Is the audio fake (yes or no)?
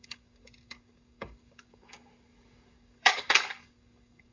yes